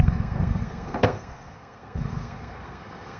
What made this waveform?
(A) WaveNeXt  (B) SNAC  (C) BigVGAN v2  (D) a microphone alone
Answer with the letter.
B